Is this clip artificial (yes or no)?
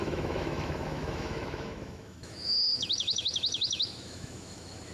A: yes